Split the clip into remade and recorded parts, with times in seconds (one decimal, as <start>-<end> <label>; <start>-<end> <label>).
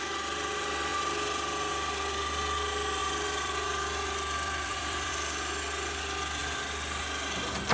0.0-3.0 recorded; 3.0-5.1 remade; 5.1-6.4 recorded; 6.4-7.0 remade; 7.0-7.7 recorded